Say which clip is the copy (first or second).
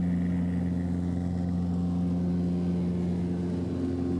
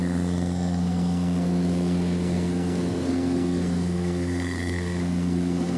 second